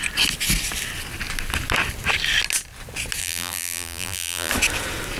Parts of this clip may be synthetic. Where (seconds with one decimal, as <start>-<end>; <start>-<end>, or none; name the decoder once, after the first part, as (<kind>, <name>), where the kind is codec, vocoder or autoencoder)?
3.2-4.5 (vocoder, BigVGAN v2)